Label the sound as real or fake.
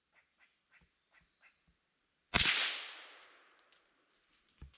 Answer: real